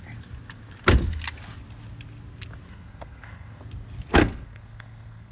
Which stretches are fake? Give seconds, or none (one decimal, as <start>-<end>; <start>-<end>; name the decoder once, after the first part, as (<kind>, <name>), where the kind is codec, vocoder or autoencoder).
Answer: 2.7-3.6 (codec, SNAC); 4.2-5.3